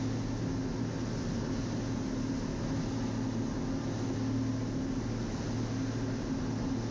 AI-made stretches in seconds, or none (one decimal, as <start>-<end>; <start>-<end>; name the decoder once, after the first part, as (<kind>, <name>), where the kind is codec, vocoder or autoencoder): none